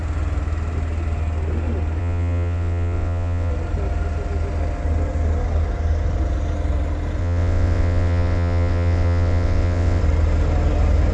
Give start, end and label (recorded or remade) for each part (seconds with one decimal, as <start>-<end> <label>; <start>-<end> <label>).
0.0-2.0 recorded; 2.0-3.5 remade; 3.5-7.2 recorded; 7.2-10.0 remade; 10.0-11.1 recorded